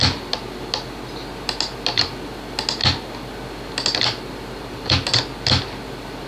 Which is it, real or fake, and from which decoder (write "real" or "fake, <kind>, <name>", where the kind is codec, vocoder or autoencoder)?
real